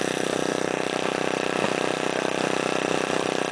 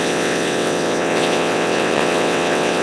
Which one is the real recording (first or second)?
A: first